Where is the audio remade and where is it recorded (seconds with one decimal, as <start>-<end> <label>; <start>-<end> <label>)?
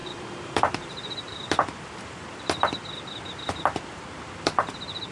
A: 0.0-1.5 remade; 1.5-5.1 recorded